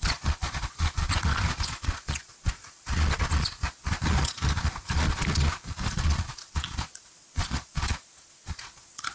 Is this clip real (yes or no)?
no